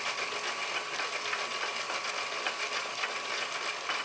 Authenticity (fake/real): real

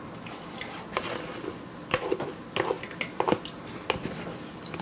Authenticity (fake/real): real